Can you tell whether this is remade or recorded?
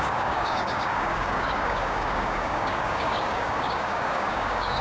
remade